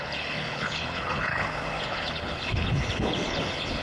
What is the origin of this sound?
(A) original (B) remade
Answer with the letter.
B